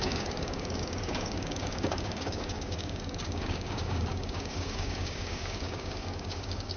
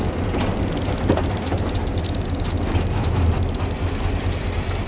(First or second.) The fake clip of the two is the first